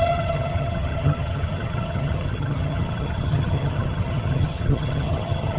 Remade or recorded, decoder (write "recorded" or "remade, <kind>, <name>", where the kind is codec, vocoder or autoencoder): remade, vocoder, HiFi-GAN